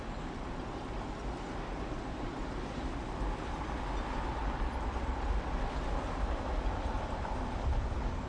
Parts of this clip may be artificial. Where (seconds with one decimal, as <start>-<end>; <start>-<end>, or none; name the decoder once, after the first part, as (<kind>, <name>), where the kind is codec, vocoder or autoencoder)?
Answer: none